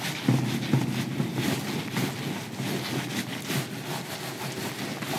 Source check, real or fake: real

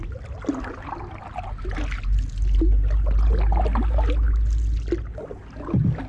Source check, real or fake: real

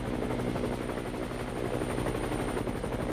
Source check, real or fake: real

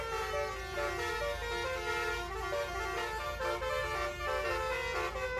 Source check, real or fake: real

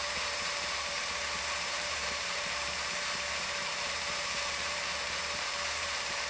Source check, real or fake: fake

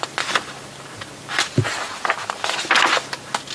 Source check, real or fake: real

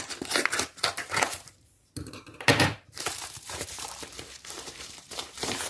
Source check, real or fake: fake